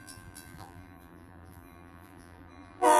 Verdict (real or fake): fake